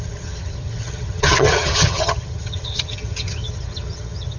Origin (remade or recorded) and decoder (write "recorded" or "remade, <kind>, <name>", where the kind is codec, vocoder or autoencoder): remade, vocoder, HiFi-GAN